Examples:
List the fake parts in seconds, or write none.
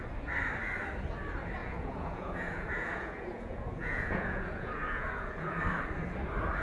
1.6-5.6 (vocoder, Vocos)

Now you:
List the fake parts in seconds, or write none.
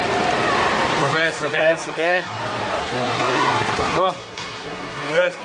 1.0-2.4 (codec, SNAC); 2.8-5.4